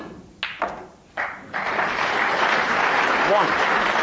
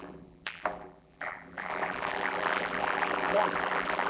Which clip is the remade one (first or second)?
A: second